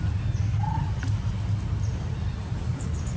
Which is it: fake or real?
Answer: real